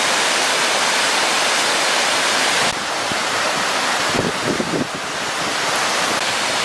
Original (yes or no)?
yes